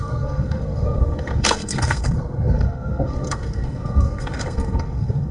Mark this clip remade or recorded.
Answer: remade